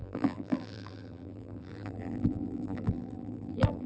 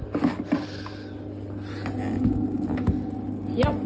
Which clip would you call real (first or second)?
second